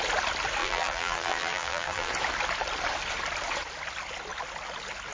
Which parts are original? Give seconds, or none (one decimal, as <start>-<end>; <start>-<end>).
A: 0.0-0.6; 2.1-5.1